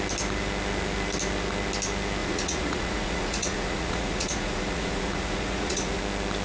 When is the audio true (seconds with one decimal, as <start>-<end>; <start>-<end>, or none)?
0.0-2.2; 6.0-6.4